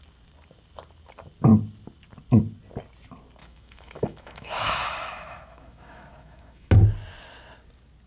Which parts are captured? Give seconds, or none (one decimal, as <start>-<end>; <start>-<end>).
0.0-3.4; 6.7-8.1